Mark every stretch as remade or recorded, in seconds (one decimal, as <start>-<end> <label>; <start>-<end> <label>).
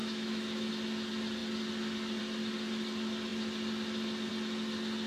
0.0-0.7 remade; 0.7-5.1 recorded